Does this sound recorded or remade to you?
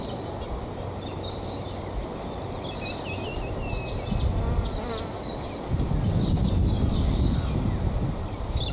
recorded